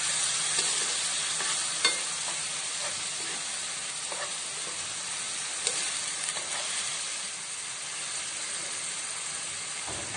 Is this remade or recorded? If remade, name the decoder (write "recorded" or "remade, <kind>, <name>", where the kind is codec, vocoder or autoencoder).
recorded